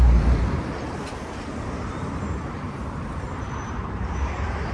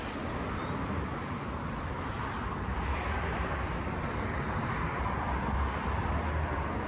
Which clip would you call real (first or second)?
second